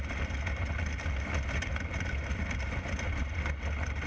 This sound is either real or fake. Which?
real